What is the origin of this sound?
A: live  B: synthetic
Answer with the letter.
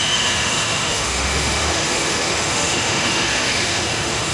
B